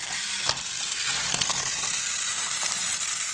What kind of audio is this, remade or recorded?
recorded